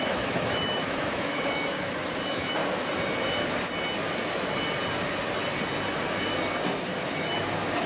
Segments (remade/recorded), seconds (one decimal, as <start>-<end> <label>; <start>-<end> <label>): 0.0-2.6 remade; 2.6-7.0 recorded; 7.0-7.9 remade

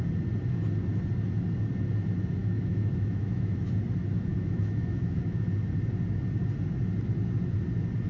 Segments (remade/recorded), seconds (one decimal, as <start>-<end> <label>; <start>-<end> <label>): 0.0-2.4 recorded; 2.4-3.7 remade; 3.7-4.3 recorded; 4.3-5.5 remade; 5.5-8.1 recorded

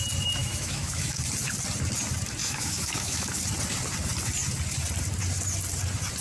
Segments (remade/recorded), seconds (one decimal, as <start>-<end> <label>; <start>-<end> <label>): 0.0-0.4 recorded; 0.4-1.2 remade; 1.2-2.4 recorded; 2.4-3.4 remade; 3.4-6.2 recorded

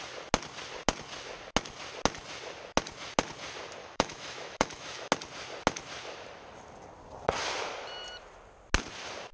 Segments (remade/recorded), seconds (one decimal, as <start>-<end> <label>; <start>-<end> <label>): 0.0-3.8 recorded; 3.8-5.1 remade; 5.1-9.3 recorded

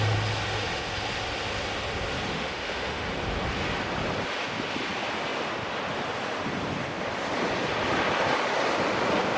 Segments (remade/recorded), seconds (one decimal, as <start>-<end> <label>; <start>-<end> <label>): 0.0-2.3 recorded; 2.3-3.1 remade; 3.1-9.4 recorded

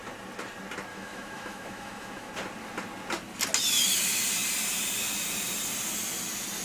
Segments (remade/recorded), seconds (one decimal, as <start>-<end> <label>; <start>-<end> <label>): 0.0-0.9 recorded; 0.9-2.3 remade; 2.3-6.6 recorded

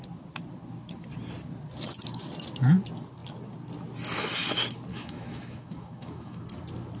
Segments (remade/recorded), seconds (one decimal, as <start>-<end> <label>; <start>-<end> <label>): 0.0-4.9 recorded; 4.9-6.4 remade; 6.4-7.0 recorded

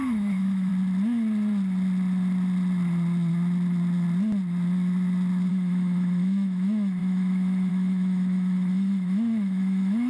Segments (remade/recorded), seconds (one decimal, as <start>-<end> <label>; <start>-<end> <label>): 0.0-0.7 remade; 0.7-5.5 recorded; 5.5-10.1 remade